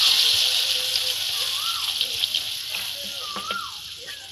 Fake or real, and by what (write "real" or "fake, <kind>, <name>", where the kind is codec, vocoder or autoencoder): real